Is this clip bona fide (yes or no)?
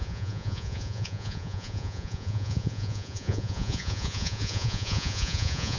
no